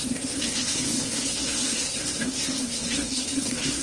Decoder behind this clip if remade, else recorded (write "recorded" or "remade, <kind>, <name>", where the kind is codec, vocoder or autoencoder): remade, codec, SNAC